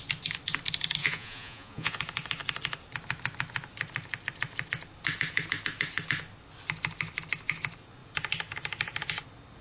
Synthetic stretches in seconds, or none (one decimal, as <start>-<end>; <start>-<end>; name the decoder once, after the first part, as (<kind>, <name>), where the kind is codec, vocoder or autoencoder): 1.0-2.0 (vocoder, Vocos)